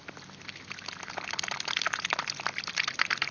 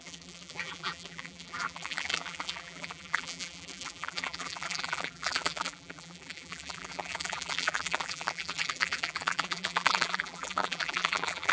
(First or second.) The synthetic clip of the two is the second